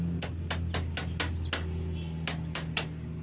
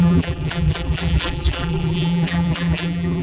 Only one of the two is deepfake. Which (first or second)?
second